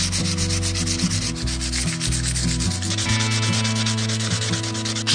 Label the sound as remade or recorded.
recorded